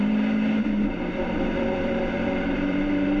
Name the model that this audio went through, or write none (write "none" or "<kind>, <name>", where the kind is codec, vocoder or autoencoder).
vocoder, BigVGAN v2